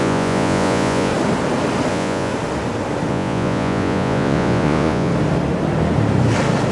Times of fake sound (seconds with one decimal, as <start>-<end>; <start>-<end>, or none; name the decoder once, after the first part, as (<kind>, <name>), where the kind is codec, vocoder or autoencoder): 0.0-1.1 (vocoder, Vocos); 1.9-2.3; 3.1-5.1

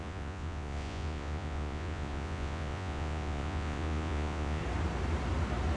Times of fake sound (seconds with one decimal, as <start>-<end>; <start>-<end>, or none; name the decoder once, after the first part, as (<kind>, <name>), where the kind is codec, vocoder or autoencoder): 0.0-4.6 (vocoder, Vocos)

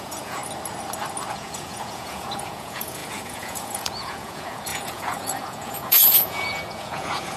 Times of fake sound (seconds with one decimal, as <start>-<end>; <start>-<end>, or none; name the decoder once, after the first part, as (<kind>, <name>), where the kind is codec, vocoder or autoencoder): 0.0-0.4 (vocoder, Vocos); 1.3-7.4

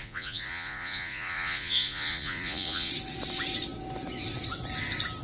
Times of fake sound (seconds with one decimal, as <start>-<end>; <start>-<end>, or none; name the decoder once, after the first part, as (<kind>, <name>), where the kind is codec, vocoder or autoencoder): 0.0-2.9 (vocoder, Vocos)